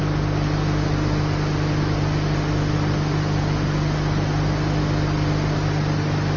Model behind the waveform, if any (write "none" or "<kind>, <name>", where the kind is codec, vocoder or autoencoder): none